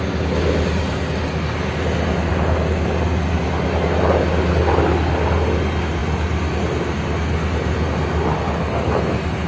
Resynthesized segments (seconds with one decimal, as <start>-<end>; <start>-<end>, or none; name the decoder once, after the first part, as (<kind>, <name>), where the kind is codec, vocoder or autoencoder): none